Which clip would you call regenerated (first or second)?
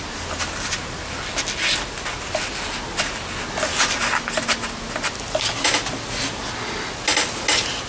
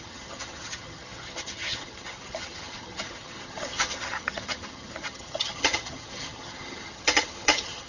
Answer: second